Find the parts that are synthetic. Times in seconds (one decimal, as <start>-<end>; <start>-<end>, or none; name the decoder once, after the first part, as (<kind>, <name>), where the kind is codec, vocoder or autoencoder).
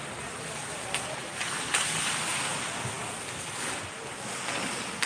0.6-1.2 (vocoder, BigVGAN v2)